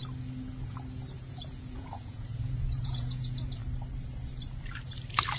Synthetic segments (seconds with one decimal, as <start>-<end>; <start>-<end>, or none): 1.2-3.6